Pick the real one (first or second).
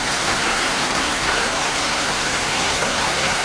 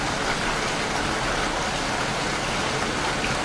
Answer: second